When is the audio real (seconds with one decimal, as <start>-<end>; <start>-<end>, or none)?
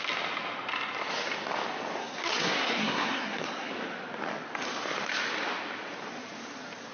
0.0-2.0; 3.7-6.9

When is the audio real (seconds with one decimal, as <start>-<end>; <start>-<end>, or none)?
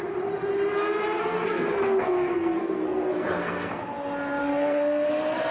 0.0-1.2; 3.8-4.4; 5.1-5.5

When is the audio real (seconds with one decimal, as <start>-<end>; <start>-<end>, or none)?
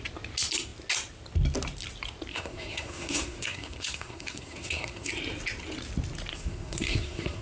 0.0-2.3; 5.1-6.3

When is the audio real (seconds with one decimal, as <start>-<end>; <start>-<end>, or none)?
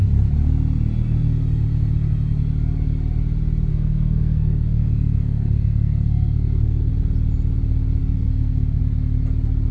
0.0-3.7; 6.9-8.0; 8.8-9.7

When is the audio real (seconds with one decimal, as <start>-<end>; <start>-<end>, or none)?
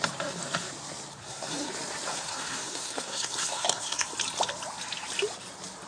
0.0-1.2; 1.7-2.1; 4.1-5.9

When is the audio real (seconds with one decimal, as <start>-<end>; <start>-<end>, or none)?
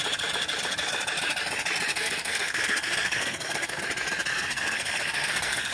0.0-1.9; 3.8-4.3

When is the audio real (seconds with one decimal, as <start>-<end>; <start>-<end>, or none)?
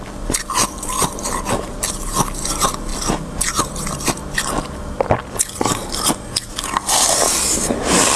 0.0-8.2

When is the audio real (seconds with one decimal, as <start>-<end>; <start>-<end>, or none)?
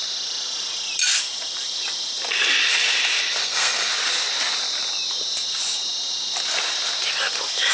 0.0-3.4; 3.9-7.7